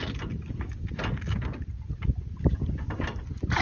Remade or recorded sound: recorded